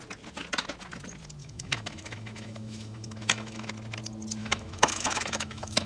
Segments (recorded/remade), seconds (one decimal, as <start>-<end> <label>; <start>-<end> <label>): 0.0-1.4 recorded; 1.4-3.7 remade; 3.7-4.4 recorded; 4.4-5.9 remade